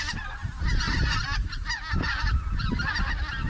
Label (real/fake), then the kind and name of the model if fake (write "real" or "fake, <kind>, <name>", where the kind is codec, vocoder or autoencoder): real